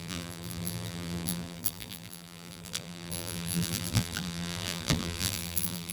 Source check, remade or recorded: remade